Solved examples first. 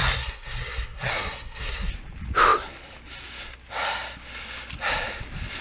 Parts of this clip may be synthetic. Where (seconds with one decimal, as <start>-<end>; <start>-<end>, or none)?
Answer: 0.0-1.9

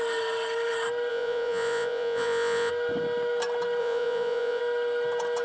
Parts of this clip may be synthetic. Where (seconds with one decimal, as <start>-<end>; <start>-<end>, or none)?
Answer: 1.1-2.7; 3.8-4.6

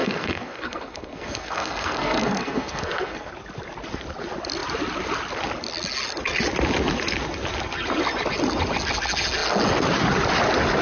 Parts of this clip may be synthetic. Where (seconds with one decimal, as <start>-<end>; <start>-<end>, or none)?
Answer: 0.0-3.3

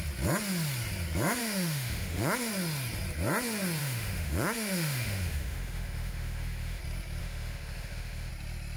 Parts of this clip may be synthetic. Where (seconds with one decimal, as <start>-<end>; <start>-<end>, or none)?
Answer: 1.4-2.5; 3.8-6.8; 7.2-8.3

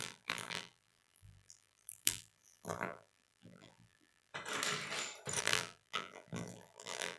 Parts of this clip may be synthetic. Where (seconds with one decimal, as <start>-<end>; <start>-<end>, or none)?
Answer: 0.0-4.3; 5.4-7.2

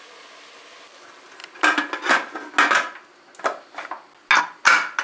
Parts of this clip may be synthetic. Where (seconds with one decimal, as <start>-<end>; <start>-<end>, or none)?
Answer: none

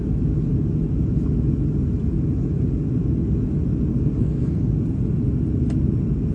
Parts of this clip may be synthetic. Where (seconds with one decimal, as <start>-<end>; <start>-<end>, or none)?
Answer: 3.9-4.7

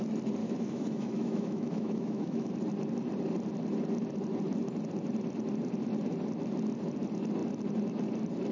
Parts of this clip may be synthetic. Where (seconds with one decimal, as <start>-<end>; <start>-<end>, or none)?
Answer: 0.4-2.5